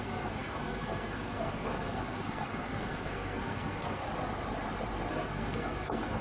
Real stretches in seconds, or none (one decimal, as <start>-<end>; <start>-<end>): 4.0-5.1